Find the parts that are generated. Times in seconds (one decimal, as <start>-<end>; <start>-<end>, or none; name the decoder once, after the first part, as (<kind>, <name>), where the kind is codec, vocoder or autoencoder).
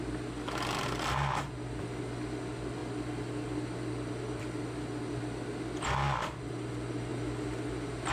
7.1-8.1 (vocoder, BigVGAN v2)